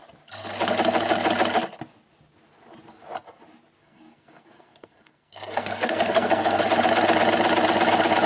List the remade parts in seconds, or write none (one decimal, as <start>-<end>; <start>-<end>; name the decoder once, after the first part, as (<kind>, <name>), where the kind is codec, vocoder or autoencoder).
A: 3.8-6.6 (codec, SNAC)